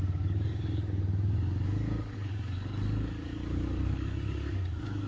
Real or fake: fake